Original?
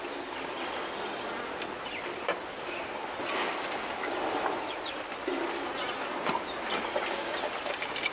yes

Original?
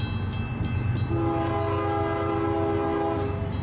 yes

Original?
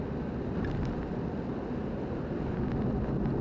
yes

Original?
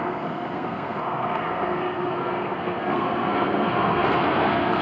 no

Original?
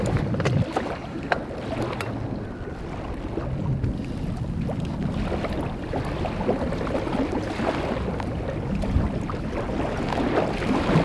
yes